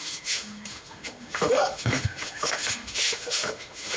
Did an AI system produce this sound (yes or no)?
yes